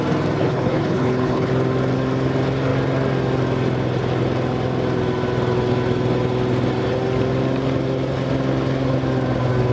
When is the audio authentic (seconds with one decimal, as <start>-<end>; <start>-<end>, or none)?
0.0-0.4; 1.5-9.7